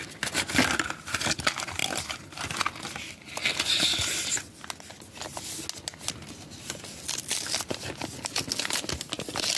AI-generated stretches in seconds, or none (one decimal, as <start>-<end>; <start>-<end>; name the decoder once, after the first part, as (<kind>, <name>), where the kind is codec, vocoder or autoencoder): none